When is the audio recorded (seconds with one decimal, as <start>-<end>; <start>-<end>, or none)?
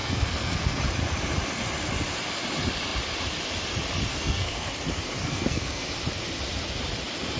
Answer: 0.8-4.1; 4.7-5.2; 5.9-7.4